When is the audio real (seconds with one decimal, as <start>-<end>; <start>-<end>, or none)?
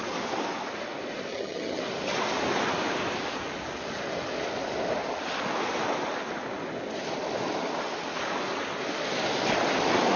0.0-1.3; 1.8-10.2